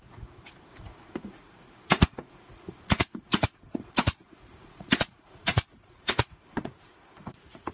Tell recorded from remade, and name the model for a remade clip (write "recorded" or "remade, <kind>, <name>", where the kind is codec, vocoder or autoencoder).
remade, vocoder, Vocos